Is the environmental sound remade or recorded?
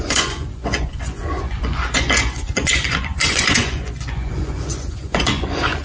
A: remade